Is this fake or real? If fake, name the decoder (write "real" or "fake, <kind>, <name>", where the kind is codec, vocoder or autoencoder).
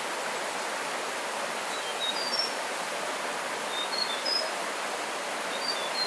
real